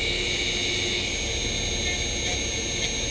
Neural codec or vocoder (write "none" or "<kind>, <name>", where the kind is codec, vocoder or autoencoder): none